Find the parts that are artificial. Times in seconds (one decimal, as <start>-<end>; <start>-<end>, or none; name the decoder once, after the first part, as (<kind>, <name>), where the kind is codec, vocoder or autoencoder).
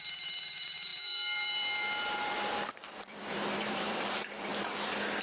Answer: 0.0-4.5 (vocoder, BigVGAN v2)